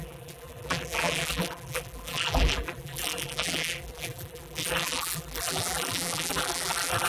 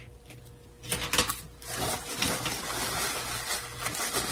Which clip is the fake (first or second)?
first